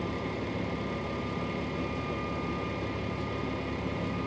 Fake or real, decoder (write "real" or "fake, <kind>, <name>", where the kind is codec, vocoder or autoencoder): real